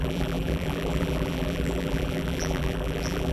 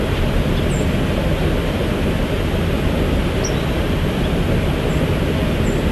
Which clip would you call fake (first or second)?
first